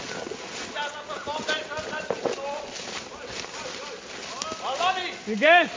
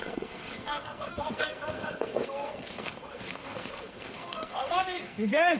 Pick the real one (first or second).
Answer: first